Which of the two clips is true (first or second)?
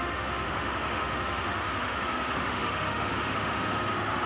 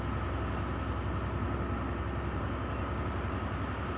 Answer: second